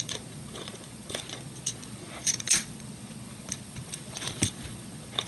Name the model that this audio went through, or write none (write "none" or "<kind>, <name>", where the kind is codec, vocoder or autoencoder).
vocoder, Vocos